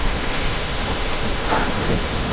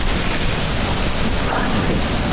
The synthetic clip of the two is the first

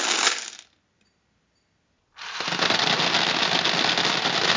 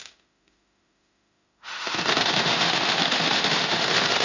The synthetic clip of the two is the second